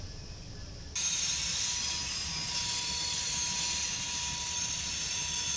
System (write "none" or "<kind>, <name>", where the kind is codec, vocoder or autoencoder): none